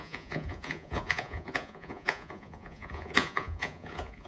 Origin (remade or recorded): remade